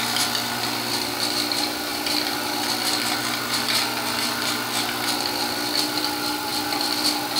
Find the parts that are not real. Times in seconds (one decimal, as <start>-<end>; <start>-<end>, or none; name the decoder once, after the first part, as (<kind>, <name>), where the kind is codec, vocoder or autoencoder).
1.9-6.0 (vocoder, BigVGAN v2)